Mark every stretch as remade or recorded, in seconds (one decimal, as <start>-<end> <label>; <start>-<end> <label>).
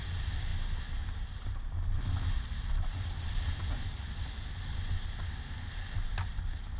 0.0-6.8 recorded